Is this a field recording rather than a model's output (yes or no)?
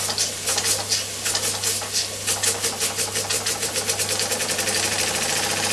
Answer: yes